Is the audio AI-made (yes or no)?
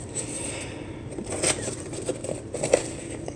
yes